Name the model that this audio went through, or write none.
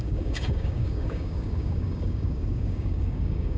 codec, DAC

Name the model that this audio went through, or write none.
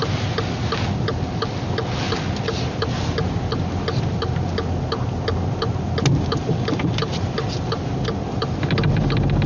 none